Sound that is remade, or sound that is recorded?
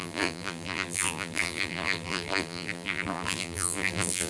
remade